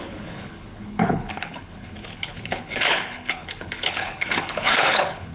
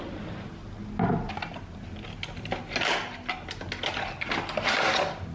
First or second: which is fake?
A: first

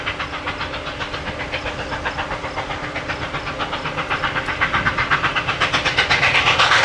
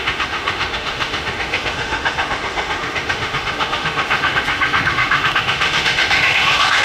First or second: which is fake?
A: second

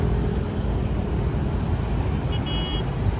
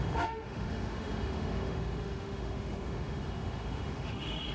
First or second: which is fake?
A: second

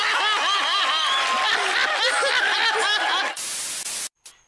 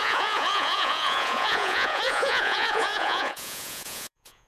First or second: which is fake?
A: second